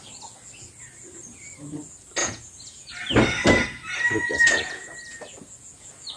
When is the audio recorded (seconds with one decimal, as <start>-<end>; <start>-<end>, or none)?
0.0-2.2; 2.9-4.2; 4.9-6.2